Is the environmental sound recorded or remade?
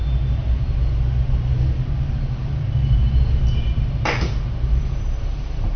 remade